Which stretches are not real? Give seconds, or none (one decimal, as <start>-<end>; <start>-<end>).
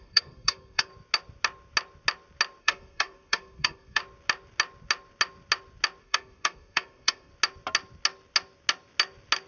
0.0-0.9; 2.6-4.0; 6.0-7.3